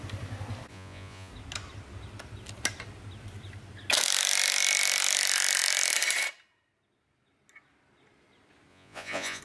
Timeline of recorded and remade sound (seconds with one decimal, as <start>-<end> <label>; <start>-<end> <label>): 0.0-0.7 recorded; 0.7-1.3 remade; 1.3-8.7 recorded; 8.7-9.4 remade